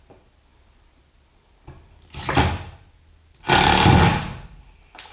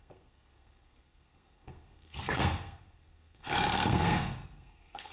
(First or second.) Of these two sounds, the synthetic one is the second